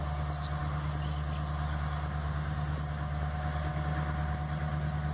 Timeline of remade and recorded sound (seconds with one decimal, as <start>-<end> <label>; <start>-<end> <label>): 0.0-5.1 recorded